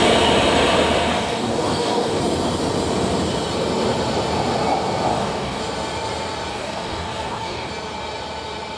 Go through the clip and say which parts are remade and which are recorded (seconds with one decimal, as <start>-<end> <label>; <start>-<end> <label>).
0.0-1.1 recorded; 1.1-2.2 remade; 2.2-5.1 recorded; 5.1-5.6 remade; 5.6-6.5 recorded; 6.5-7.7 remade; 7.7-8.8 recorded